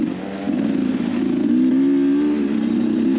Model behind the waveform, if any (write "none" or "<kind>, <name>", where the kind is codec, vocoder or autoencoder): none